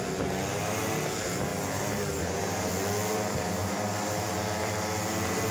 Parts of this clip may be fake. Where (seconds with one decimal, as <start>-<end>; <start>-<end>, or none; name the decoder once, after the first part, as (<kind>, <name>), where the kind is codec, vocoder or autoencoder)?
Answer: 1.5-2.7 (vocoder, BigVGAN v2); 3.6-4.4